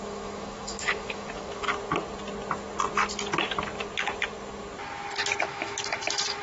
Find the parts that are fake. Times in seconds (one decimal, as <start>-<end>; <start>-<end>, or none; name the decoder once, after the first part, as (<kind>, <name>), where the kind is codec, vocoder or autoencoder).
0.0-1.7 (autoencoder, DAC-VAE); 5.5-6.4